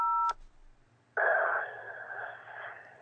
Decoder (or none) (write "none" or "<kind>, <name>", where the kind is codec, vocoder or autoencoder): none